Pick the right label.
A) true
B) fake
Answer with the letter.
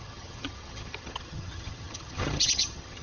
B